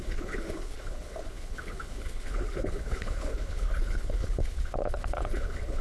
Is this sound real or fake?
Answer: fake